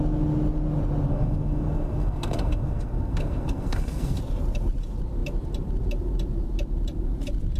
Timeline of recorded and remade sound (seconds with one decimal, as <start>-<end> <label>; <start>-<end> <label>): 0.0-1.1 recorded; 1.1-4.2 remade; 4.2-7.6 recorded